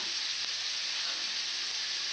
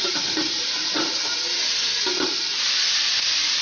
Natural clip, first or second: first